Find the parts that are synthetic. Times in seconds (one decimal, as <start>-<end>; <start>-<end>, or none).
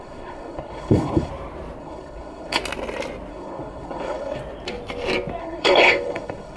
0.0-1.3; 1.8-2.6; 3.3-4.4; 5.4-6.6